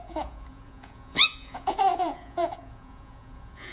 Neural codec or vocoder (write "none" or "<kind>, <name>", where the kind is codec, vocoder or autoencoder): vocoder, Vocos